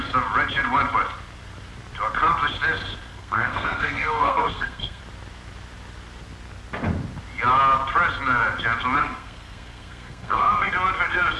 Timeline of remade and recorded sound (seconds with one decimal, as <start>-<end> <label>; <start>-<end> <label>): 0.0-3.1 recorded; 3.1-5.0 remade; 5.0-9.0 recorded; 9.0-10.7 remade; 10.7-11.4 recorded